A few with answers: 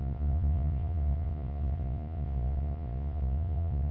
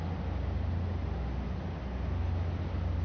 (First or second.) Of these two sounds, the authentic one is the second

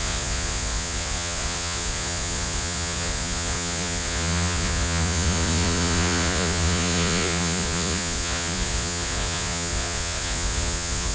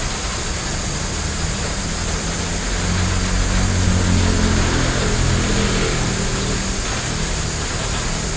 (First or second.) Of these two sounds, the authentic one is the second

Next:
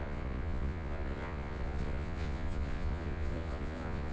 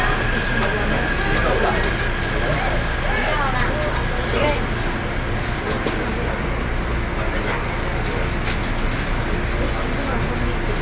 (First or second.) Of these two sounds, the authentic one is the second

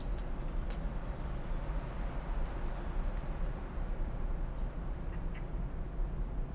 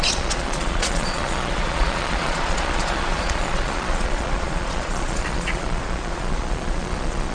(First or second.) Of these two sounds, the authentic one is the first